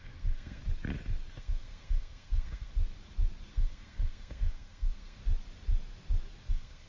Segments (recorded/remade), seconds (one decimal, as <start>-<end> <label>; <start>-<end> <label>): 0.0-0.6 remade; 0.6-1.3 recorded; 1.3-2.7 remade; 2.7-3.5 recorded; 3.5-5.2 remade; 5.2-6.5 recorded; 6.5-6.9 remade